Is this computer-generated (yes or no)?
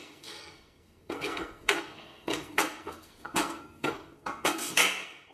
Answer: yes